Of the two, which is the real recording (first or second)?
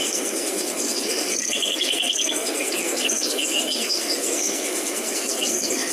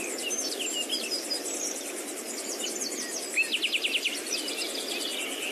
second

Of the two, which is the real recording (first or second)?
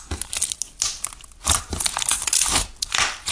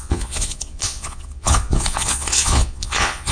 first